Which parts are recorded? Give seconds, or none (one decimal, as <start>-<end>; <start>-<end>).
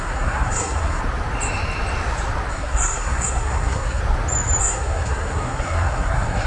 1.0-2.5; 4.0-4.6